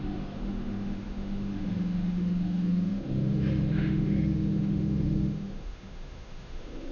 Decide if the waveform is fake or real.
fake